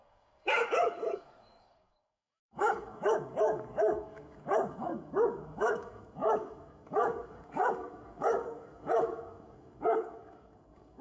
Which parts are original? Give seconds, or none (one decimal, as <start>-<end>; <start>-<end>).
none

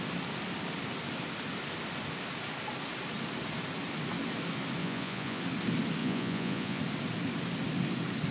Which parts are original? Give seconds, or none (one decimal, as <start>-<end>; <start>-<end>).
0.0-4.8; 5.4-6.0; 6.8-8.3

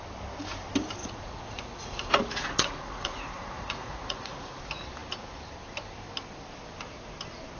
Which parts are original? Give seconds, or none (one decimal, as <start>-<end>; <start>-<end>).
0.0-1.0; 4.6-7.6